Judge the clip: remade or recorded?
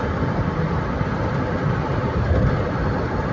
recorded